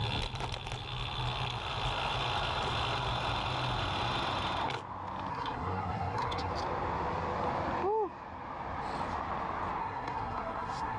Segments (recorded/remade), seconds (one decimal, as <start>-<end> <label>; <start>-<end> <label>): 0.0-5.3 recorded; 5.3-6.5 remade; 6.5-9.8 recorded; 9.8-11.0 remade